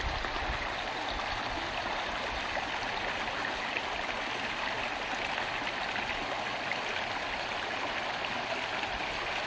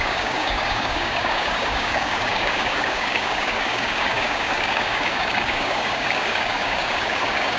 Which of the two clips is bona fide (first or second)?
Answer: first